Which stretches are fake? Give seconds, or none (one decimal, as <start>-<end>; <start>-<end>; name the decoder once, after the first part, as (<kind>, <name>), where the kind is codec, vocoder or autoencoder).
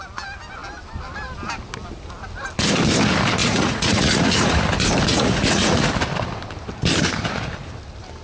3.4-4.6 (vocoder, Vocos); 5.1-5.9